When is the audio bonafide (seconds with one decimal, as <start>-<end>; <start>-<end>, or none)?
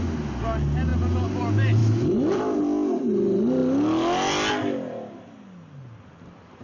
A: 0.0-1.8; 2.3-6.6